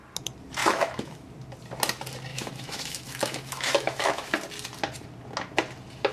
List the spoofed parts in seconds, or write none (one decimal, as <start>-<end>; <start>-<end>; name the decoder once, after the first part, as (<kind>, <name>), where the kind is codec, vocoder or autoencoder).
0.6-1.3 (autoencoder, DAC-VAE); 2.3-4.3